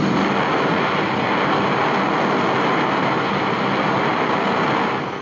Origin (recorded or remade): recorded